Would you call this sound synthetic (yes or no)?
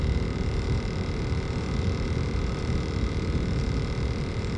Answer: yes